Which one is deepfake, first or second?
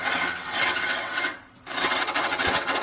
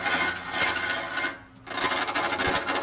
first